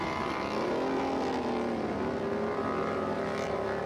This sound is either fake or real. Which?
real